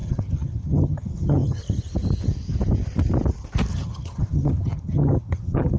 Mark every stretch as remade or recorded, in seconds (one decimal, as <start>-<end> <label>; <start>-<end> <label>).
0.0-1.6 remade; 1.6-3.7 recorded; 3.7-5.8 remade